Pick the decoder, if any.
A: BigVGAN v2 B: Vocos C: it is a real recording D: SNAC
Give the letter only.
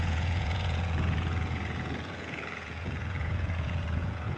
B